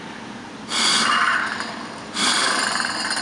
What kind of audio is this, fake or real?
real